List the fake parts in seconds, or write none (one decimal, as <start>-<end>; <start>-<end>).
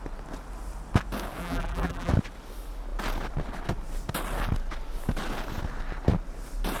1.4-2.1